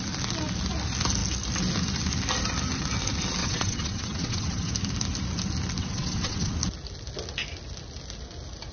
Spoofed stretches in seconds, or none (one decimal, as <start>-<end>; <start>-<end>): 3.4-4.7; 5.8-6.5